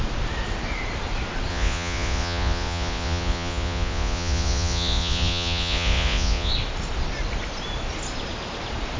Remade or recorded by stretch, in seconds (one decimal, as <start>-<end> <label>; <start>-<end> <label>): 0.0-1.5 recorded; 1.5-6.5 remade; 6.5-9.0 recorded